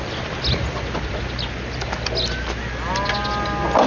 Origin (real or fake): real